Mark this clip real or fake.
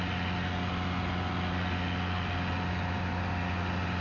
real